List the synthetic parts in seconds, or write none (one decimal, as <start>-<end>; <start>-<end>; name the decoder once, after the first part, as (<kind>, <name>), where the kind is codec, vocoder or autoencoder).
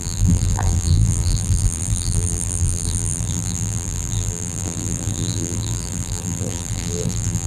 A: 0.0-7.5 (vocoder, BigVGAN v2)